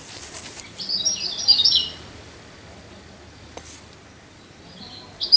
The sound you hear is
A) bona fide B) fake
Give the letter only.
A